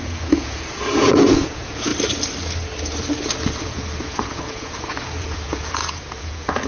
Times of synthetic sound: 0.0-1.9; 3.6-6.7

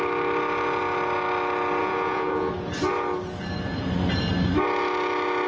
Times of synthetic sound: 1.8-2.5

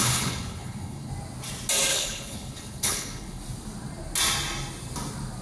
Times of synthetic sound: 0.0-1.1; 1.9-3.4

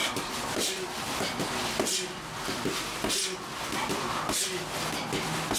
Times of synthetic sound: 0.0-0.9

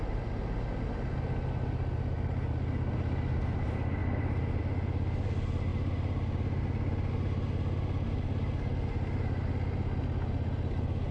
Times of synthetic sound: none

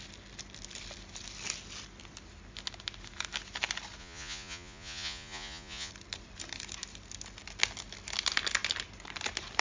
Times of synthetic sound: 4.0-5.9

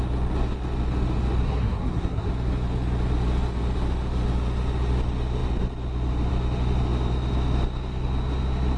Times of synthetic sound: 1.4-2.3

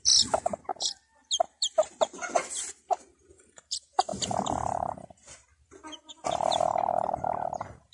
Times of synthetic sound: 0.0-4.1; 4.7-7.9